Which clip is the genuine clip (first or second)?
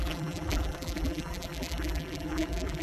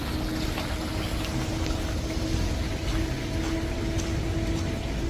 second